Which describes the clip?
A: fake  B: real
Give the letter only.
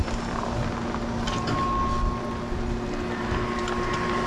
B